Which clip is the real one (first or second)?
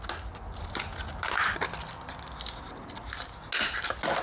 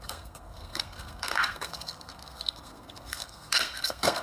first